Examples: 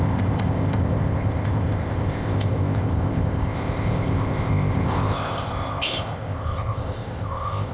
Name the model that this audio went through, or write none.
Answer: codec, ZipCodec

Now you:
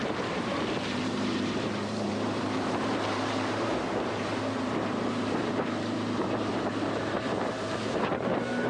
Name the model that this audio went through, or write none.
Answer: vocoder, BigVGAN v2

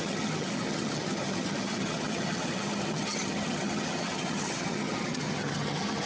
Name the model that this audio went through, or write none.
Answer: vocoder, HiFi-GAN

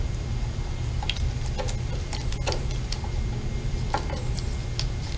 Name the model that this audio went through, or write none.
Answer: none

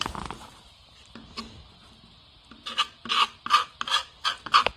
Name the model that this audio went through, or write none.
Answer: none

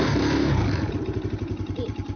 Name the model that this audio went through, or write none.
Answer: vocoder, BigVGAN v2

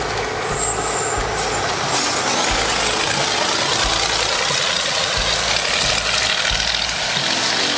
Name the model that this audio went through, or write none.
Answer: none